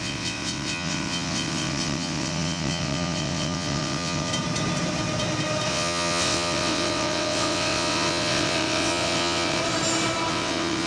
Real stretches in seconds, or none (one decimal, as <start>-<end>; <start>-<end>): 4.3-5.7; 9.6-10.3